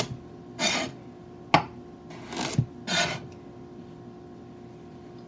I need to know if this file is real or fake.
real